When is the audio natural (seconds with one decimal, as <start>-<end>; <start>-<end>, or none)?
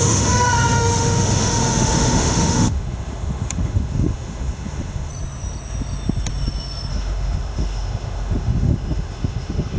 5.1-6.9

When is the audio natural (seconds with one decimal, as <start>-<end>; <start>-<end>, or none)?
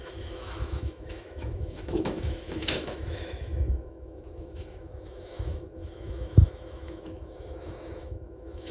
none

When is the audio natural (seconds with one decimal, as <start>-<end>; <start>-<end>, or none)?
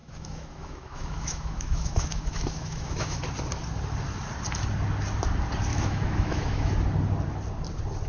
3.2-5.7; 6.7-8.1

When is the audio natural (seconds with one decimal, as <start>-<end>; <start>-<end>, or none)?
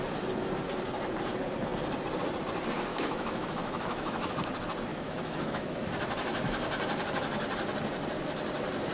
0.0-2.9; 4.3-4.9; 5.9-8.9